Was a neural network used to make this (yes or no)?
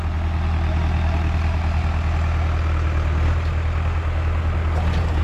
no